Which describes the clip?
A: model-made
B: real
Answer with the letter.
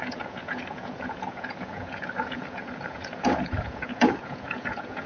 A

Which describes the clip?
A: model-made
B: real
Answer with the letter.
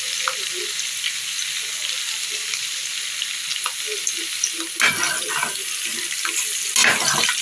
B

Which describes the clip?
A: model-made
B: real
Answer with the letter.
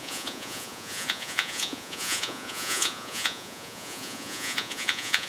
A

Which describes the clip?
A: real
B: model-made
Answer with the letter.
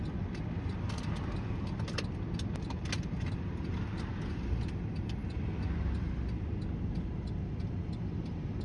A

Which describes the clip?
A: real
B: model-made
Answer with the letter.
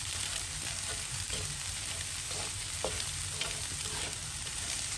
A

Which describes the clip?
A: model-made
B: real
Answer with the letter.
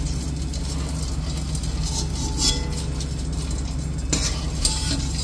B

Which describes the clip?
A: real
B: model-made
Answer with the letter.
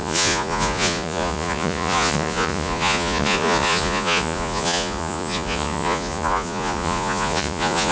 B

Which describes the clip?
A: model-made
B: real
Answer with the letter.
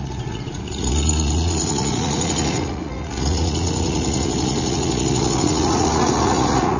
A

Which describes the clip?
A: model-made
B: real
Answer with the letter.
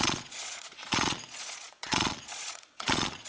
A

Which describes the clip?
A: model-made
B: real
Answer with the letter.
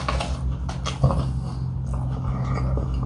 B